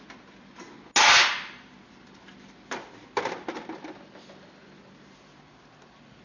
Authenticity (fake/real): real